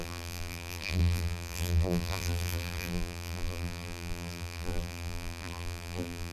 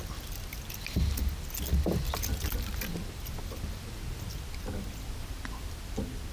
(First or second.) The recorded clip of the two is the second